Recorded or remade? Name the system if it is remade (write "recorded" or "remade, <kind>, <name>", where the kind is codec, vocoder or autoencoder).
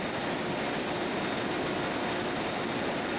recorded